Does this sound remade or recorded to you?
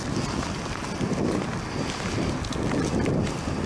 recorded